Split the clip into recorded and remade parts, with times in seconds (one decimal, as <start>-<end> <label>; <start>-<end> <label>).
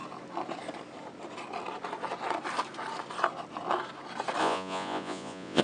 0.0-4.4 recorded; 4.4-5.6 remade